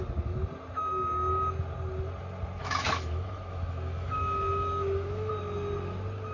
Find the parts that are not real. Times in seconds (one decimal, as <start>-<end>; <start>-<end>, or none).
2.6-5.3